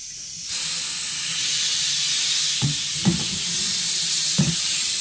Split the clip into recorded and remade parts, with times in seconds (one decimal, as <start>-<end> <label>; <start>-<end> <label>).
0.0-3.0 recorded; 3.0-5.0 remade